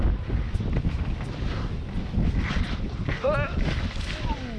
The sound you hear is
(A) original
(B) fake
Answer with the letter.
A